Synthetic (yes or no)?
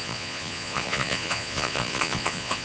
yes